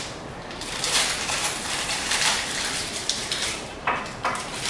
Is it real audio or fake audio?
fake